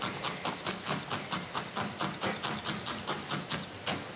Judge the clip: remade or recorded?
recorded